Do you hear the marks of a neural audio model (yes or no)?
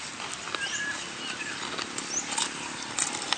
no